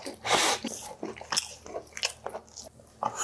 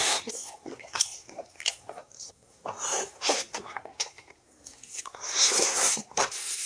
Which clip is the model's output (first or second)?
second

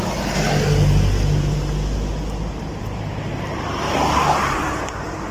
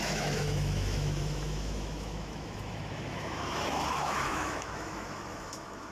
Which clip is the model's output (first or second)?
second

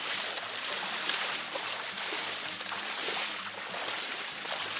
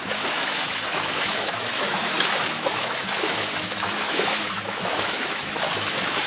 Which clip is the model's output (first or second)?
second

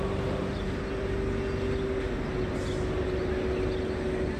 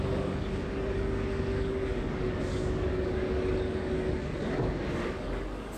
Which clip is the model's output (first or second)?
second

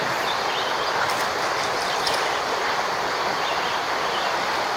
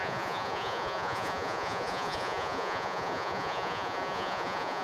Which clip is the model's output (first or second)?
second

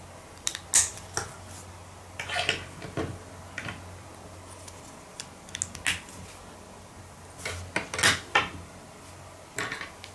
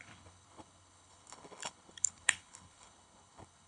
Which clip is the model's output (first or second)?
second